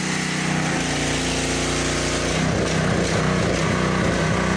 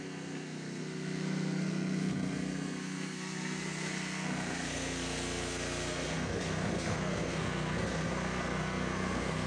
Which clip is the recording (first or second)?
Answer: first